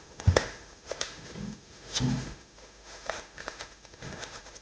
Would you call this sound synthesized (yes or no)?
yes